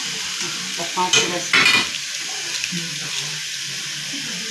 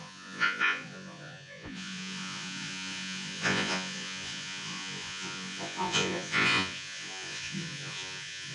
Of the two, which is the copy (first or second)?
second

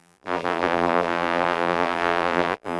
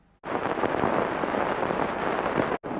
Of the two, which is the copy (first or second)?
first